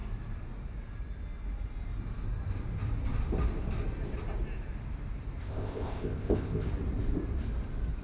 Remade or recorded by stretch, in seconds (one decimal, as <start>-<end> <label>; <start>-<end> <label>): 0.0-5.4 recorded; 5.4-6.7 remade; 6.7-8.0 recorded

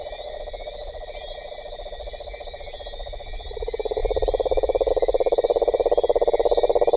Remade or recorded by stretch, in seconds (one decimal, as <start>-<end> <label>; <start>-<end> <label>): 0.0-0.8 recorded; 0.8-2.6 remade; 2.6-4.0 recorded; 4.0-4.9 remade; 4.9-7.0 recorded

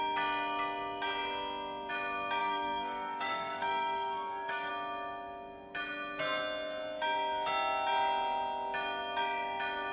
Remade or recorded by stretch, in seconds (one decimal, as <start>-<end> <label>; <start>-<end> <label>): 0.0-2.4 recorded; 2.4-4.7 remade; 4.7-9.9 recorded

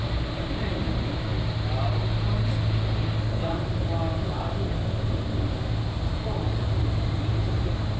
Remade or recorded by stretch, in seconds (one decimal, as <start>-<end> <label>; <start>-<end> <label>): 0.0-1.3 remade; 1.3-6.1 recorded; 6.1-8.0 remade

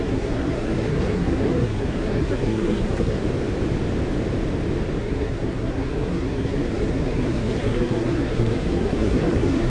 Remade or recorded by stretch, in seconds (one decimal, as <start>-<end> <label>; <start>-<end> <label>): 0.0-3.2 remade; 3.2-5.0 recorded; 5.0-9.7 remade